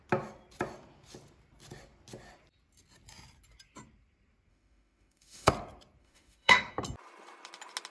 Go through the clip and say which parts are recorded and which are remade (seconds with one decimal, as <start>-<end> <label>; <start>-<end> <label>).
0.0-4.5 recorded; 4.5-5.5 remade; 5.5-6.0 recorded; 6.0-6.7 remade; 6.7-7.9 recorded